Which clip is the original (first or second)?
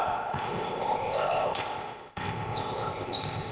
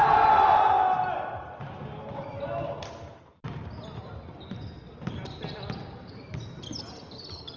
second